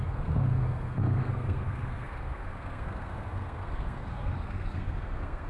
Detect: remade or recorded remade